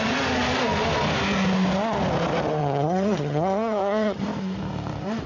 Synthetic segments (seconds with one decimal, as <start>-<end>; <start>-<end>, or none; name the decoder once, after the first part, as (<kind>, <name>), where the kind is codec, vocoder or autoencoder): 2.6-4.2 (vocoder, HiFi-GAN)